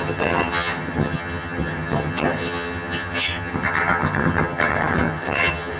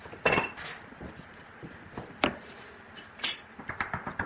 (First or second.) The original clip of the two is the second